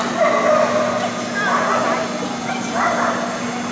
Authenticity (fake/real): real